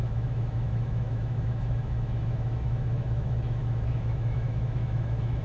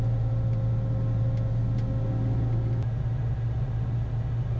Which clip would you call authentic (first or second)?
second